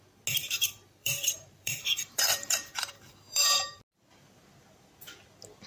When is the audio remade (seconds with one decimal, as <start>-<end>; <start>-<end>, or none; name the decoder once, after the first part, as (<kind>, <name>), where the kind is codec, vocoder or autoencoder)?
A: 0.4-3.8 (vocoder, BigVGAN v2)